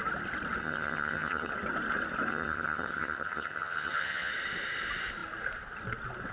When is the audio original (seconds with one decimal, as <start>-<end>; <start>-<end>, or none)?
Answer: 0.0-0.6; 1.5-2.3; 4.3-6.3